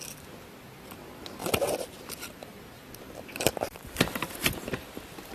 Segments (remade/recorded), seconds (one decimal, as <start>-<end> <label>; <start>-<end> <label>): 0.0-1.4 recorded; 1.4-3.7 remade; 3.7-5.3 recorded